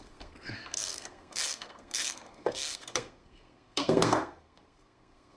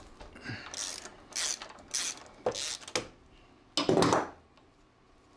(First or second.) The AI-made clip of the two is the first